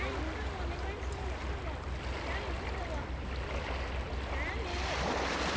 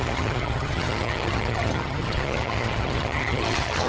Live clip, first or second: first